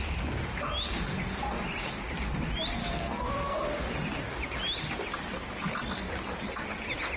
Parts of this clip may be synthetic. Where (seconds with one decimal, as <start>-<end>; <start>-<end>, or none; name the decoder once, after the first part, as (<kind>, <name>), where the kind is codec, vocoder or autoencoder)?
2.8-3.6 (codec, SNAC)